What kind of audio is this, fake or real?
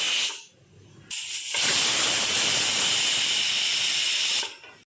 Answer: real